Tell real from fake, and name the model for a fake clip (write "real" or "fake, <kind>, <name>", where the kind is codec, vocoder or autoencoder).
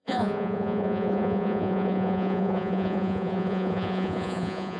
fake, vocoder, Vocos